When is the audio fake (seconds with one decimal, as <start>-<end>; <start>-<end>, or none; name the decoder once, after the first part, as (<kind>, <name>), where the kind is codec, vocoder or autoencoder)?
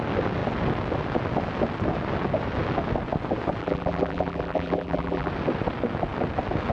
3.6-5.3 (vocoder, BigVGAN v2)